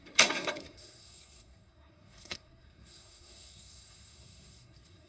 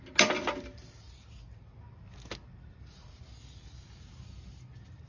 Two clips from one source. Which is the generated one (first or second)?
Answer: first